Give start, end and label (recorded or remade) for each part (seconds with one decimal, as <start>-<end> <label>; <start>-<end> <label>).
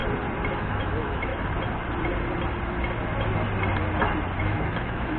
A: 0.0-0.6 recorded; 0.6-1.3 remade; 1.3-4.4 recorded; 4.4-5.2 remade